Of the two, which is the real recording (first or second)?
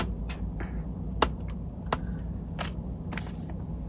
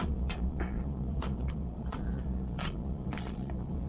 first